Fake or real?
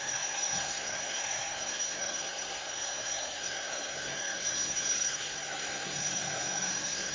fake